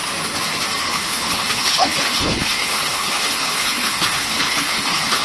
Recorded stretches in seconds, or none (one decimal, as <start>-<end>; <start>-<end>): 0.0-0.8